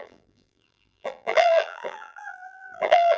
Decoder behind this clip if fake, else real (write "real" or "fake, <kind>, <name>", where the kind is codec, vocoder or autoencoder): fake, vocoder, BigVGAN v2